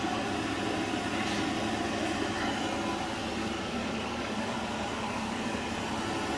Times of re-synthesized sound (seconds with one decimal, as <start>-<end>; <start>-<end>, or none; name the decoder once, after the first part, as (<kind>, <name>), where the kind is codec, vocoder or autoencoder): 3.4-5.7 (codec, DAC)